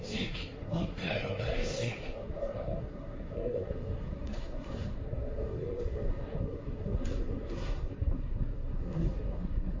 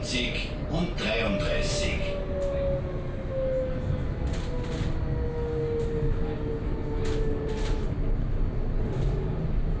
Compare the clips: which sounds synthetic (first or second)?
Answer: first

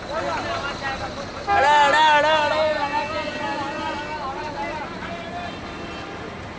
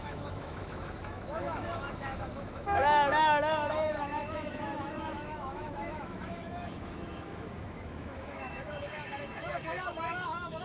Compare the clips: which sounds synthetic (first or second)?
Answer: second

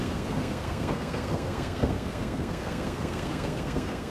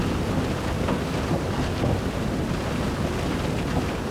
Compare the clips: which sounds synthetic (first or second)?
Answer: first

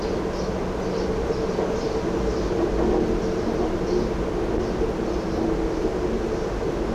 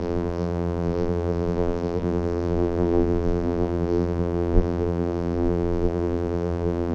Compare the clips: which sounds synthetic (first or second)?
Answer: second